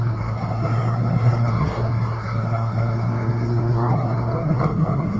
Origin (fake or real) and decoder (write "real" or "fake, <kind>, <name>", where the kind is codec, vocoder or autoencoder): fake, codec, SNAC